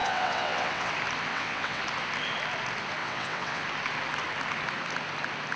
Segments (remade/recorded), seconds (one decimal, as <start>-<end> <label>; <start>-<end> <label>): 0.0-0.9 remade; 0.9-1.3 recorded; 1.3-1.8 remade; 1.8-3.0 recorded; 3.0-3.6 remade; 3.6-5.6 recorded